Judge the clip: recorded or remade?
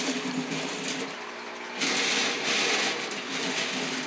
recorded